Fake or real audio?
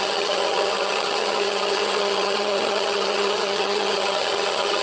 fake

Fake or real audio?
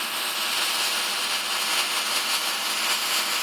real